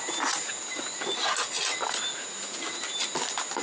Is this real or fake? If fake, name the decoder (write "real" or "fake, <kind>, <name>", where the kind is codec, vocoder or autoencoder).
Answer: real